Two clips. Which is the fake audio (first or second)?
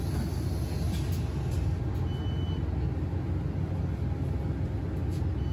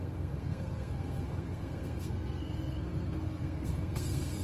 second